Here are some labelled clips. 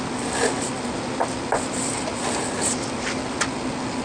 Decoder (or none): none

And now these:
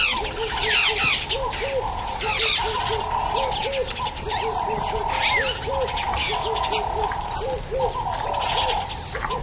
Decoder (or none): none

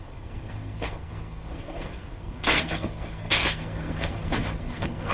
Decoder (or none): codec, SNAC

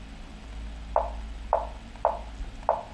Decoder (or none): none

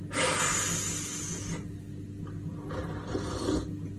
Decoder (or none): none